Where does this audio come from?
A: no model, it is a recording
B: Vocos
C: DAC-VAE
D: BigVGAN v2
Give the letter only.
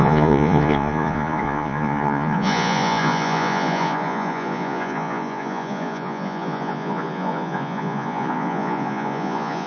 B